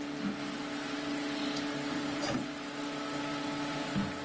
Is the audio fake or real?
real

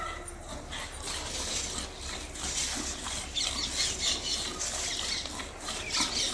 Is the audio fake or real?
real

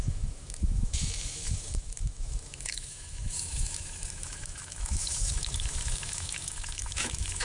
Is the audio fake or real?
fake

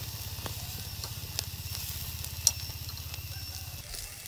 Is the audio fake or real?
real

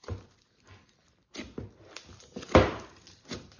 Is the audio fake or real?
real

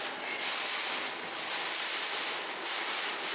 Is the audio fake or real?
real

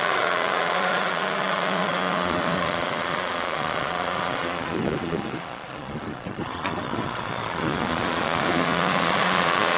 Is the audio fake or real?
fake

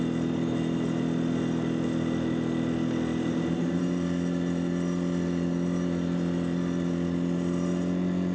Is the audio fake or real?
real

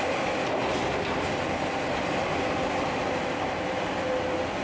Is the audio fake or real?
real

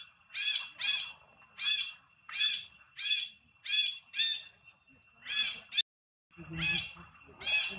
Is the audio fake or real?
real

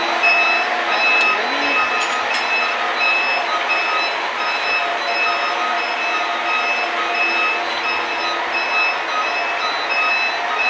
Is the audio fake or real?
real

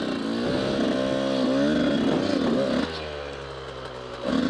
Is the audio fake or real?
real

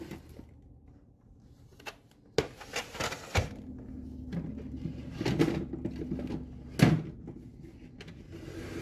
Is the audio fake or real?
real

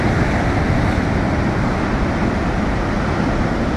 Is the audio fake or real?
real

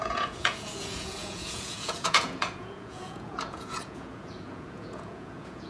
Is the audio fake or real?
fake